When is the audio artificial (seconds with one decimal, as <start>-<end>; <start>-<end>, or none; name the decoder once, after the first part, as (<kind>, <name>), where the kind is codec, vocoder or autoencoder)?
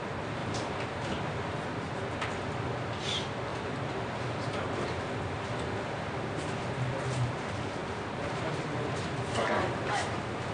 0.4-1.1 (vocoder, BigVGAN v2); 3.5-4.1